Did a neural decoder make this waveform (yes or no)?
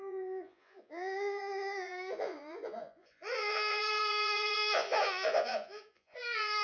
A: yes